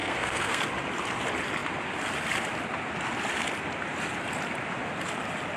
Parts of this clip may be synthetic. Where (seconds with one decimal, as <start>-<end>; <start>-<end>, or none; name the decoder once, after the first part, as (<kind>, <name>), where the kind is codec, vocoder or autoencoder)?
0.0-0.6 (codec, SNAC)